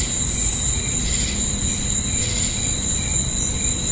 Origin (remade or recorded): recorded